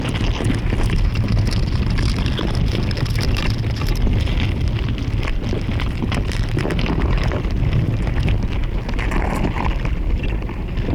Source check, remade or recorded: recorded